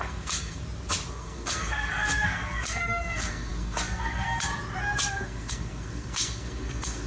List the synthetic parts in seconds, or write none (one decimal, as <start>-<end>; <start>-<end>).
0.0-0.6; 1.1-4.5; 5.1-7.1